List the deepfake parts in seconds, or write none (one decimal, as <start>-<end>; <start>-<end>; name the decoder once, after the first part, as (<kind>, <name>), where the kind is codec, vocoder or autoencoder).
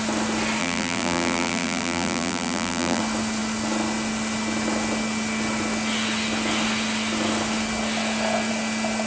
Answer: 0.6-3.0 (vocoder, BigVGAN v2)